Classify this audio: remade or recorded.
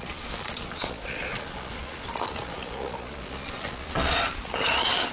remade